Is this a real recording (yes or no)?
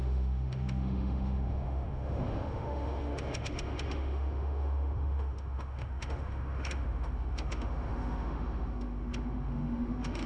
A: no